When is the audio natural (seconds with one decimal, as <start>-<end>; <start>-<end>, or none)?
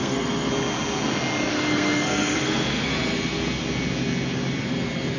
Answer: 0.5-1.5; 2.9-5.2